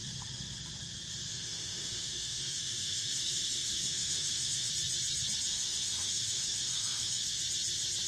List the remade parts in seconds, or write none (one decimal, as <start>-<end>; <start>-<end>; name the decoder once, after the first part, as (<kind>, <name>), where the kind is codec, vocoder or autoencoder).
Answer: 1.3-4.7 (autoencoder, DAC-VAE); 5.5-7.4